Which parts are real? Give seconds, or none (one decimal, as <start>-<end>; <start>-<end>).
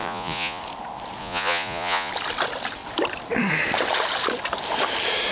0.6-1.2; 2.1-5.3